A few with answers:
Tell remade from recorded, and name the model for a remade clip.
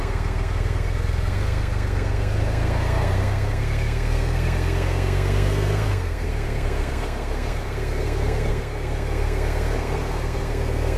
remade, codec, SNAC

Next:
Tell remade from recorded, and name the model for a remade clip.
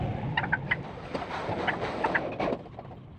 recorded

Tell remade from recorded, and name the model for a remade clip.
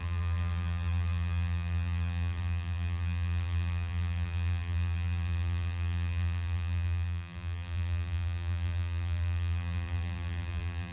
remade, vocoder, BigVGAN v2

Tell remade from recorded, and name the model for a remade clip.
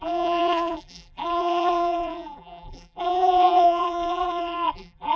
remade, vocoder, BigVGAN v2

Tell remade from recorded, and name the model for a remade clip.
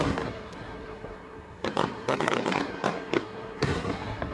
remade, codec, SNAC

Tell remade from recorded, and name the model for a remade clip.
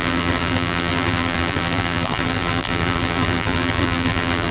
remade, vocoder, BigVGAN v2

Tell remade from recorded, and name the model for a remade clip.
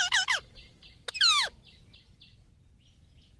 recorded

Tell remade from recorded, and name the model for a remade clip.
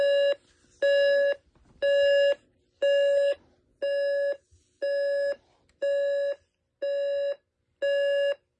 recorded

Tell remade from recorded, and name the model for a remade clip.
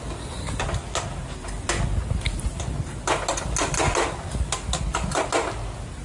recorded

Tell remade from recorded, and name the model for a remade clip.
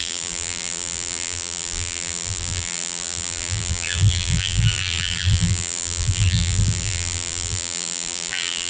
remade, vocoder, BigVGAN v2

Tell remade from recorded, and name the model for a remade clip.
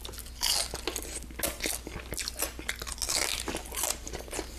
recorded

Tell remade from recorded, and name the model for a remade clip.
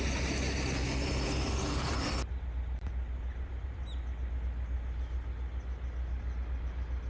recorded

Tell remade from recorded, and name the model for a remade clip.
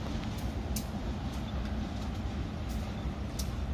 recorded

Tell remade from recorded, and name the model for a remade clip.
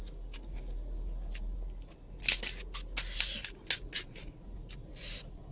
recorded